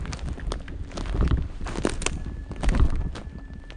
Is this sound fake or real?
real